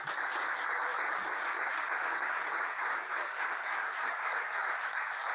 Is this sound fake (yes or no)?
yes